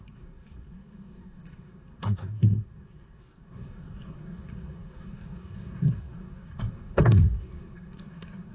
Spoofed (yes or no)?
yes